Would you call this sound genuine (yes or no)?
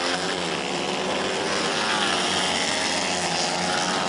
yes